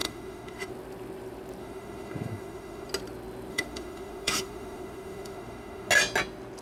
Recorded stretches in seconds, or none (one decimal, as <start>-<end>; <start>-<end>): 0.7-1.6; 2.9-3.5; 5.9-6.6